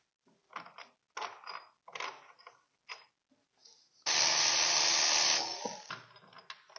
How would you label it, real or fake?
real